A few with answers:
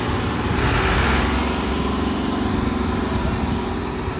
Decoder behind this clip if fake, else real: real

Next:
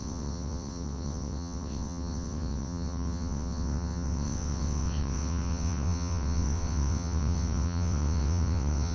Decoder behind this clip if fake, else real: fake, vocoder, WaveNeXt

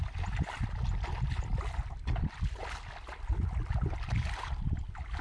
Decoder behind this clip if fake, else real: real